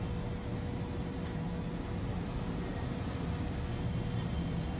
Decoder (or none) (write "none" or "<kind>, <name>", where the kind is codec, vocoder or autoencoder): none